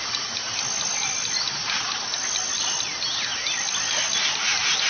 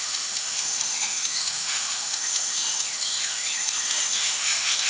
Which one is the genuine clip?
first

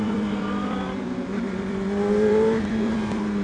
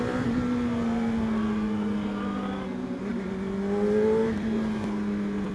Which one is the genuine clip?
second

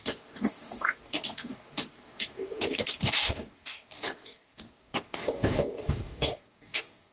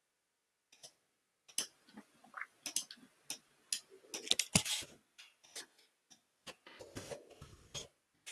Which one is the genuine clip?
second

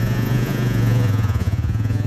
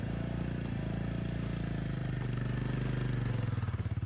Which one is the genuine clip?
second